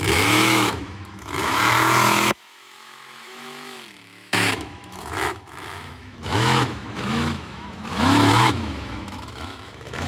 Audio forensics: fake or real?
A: fake